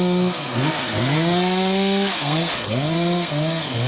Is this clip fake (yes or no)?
yes